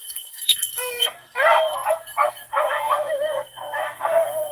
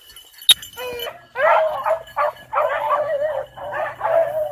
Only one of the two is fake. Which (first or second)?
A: first